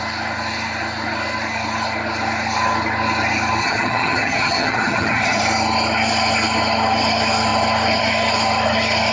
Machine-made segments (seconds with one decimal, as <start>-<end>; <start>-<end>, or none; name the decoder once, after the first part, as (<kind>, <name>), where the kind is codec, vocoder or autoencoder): 3.6-5.4 (vocoder, HiFi-GAN)

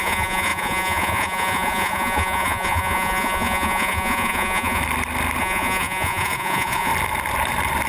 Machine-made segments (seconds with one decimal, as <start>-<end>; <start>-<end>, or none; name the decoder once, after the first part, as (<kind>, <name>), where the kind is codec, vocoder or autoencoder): 0.0-4.8 (vocoder, Vocos); 5.4-6.9

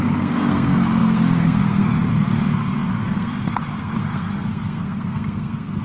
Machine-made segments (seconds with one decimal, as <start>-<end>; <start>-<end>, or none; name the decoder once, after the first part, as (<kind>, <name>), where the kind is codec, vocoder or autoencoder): 0.0-5.8 (codec, SNAC)